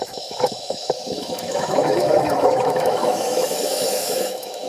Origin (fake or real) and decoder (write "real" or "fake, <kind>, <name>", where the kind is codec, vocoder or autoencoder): fake, autoencoder, DAC-VAE